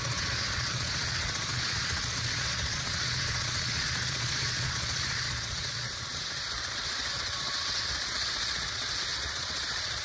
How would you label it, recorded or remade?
remade